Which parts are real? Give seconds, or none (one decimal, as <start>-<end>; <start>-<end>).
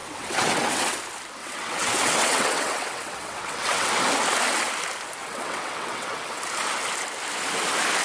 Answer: 1.0-1.4; 3.9-5.2; 6.4-8.0